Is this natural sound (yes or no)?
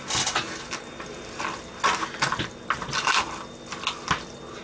yes